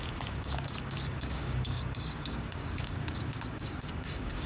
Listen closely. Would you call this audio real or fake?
fake